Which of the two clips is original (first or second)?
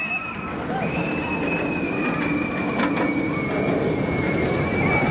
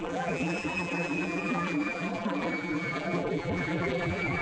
first